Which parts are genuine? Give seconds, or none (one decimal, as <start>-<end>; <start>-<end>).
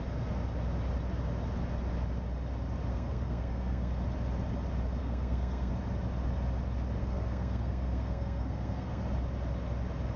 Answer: 0.0-2.9; 3.9-5.0; 5.7-7.0; 9.0-10.2